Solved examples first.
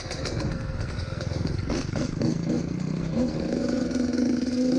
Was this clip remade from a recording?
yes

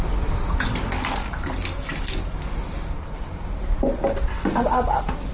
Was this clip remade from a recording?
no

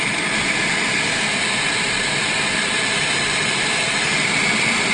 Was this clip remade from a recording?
no